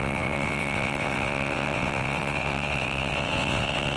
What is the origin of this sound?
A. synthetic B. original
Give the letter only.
A